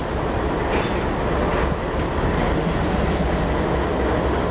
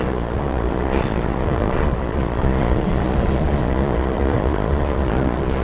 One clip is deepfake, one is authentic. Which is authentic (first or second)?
first